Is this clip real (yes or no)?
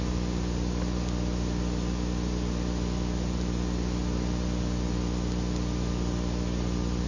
yes